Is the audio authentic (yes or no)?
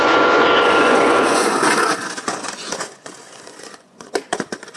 no